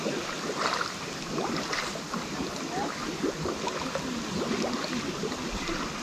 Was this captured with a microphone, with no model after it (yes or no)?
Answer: yes